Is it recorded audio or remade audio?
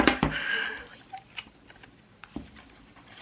remade